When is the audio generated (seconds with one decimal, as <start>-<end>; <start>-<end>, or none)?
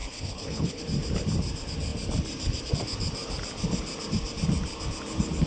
0.0-0.8